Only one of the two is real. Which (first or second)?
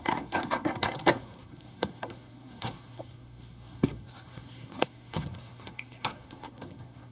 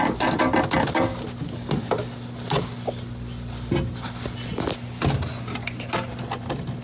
second